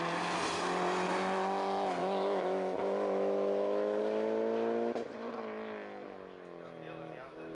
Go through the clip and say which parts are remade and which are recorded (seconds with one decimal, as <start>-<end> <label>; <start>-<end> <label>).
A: 0.0-2.0 recorded; 2.0-4.0 remade; 4.0-7.5 recorded